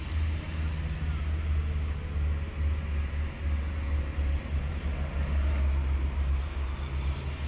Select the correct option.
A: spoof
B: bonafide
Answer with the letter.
B